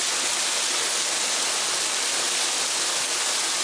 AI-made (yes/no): no